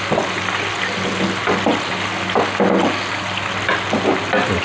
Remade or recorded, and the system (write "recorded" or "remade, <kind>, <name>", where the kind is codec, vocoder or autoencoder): recorded